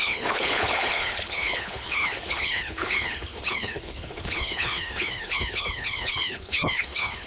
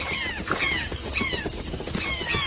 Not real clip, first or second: first